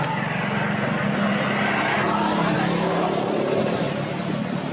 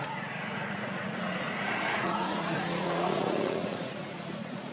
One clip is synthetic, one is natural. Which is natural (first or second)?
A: first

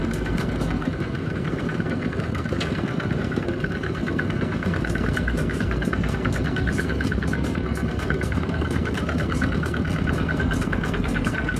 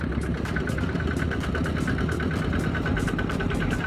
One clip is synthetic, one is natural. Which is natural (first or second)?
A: second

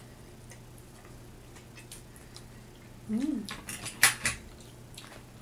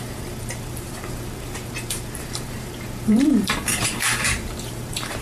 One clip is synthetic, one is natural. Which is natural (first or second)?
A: first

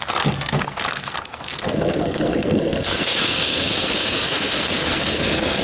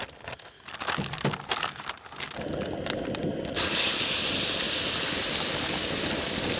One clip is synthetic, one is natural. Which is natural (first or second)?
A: second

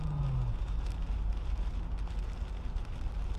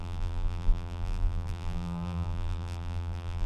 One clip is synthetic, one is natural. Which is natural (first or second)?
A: first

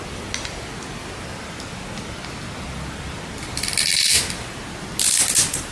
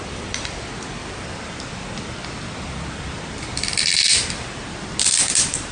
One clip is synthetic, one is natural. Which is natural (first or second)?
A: first